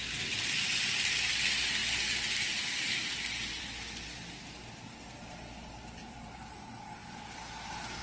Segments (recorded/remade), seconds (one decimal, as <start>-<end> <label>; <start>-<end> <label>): 0.0-6.0 recorded; 6.0-6.6 remade; 6.6-7.0 recorded; 7.0-8.0 remade